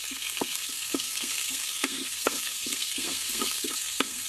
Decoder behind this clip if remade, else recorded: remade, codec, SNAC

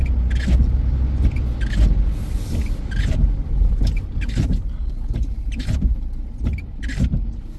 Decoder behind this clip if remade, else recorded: recorded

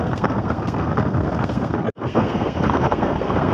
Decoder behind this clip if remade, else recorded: remade, codec, SNAC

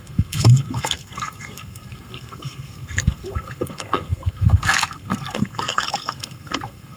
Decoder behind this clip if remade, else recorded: remade, codec, SNAC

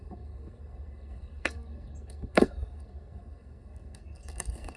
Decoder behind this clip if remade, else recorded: remade, codec, SNAC